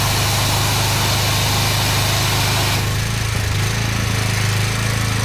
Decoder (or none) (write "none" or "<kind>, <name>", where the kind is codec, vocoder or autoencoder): none